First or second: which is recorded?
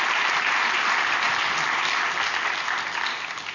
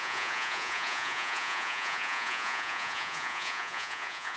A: first